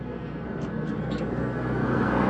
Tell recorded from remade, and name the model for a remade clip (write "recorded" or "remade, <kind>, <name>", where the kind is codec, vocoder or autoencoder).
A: remade, codec, SNAC